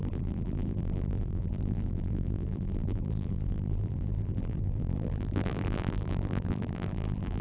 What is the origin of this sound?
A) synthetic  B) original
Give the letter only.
A